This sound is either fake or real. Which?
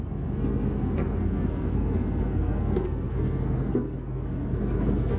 fake